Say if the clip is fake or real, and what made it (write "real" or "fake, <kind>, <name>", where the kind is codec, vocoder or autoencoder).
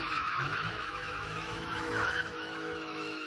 fake, autoencoder, DAC-VAE